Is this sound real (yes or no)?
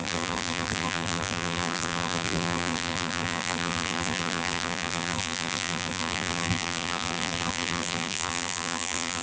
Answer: no